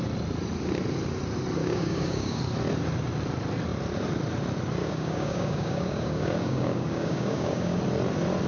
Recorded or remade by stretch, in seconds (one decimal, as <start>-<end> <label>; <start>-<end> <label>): 0.0-1.6 recorded; 1.6-2.4 remade; 2.4-4.8 recorded; 4.8-7.8 remade; 7.8-8.5 recorded